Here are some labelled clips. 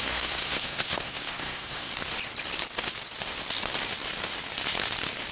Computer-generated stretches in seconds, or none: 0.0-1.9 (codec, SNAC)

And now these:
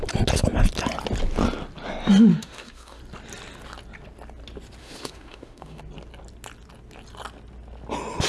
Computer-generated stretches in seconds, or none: 2.3-3.0 (autoencoder, DAC-VAE); 4.8-5.8

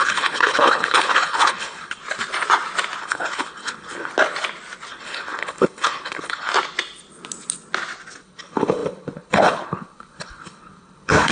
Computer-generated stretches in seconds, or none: 0.0-2.0 (codec, HILCodec); 3.0-4.1; 4.9-6.5; 8.2-11.3

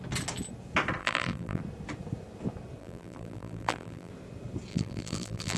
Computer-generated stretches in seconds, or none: 1.0-1.6 (vocoder, BigVGAN v2); 2.8-4.1; 4.7-5.6

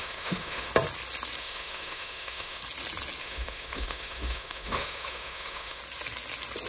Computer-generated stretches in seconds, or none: 0.0-0.7 (autoencoder, DAC-VAE); 1.4-2.6; 3.2-5.8

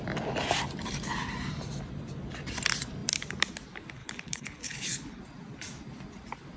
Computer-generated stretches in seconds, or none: 4.0-5.2 (codec, HILCodec)

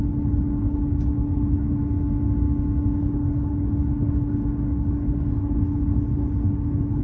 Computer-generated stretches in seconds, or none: 0.0-1.8 (codec, HILCodec); 3.0-7.0